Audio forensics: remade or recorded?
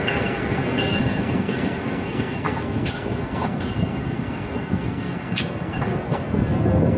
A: remade